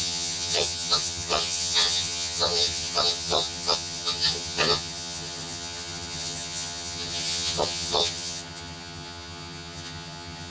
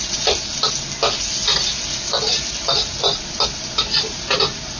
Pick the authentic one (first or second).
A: second